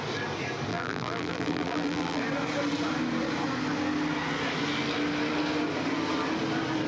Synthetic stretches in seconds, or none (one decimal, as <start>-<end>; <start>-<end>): 0.7-2.2